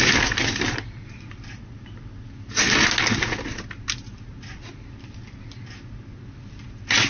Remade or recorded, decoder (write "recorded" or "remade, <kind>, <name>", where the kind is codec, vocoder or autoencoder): recorded